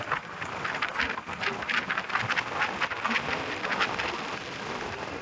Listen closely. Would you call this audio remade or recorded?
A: recorded